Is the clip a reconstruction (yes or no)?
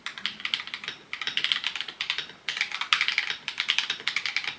no